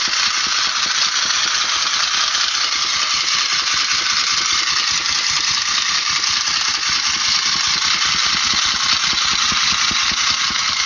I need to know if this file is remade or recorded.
recorded